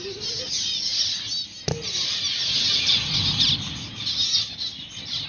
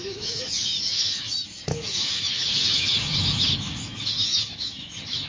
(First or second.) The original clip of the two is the first